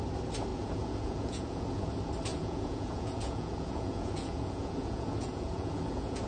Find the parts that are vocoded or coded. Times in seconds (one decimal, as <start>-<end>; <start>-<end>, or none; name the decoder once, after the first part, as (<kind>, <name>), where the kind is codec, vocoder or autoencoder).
0.5-1.9 (vocoder, Vocos); 2.3-6.3